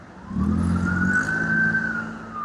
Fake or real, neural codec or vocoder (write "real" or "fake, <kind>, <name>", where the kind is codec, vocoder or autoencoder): real